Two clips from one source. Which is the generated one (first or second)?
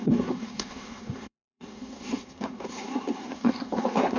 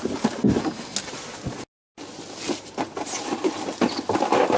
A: first